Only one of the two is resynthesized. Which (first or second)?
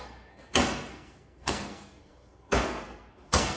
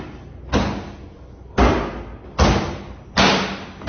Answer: first